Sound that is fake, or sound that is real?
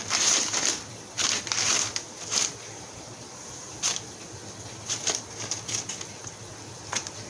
real